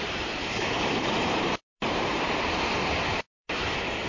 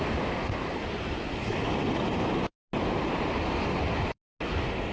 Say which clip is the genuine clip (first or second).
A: second